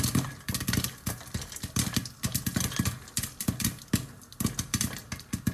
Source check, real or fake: real